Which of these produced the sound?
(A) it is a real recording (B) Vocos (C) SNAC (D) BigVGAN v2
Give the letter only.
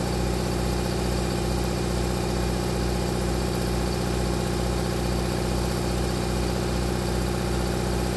A